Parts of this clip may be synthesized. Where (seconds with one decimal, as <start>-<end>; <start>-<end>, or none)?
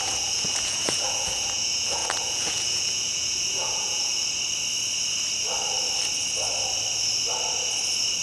0.0-4.1